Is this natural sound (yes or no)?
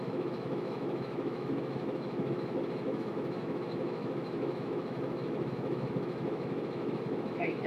no